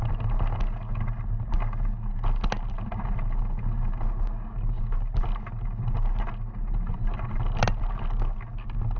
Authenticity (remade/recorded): recorded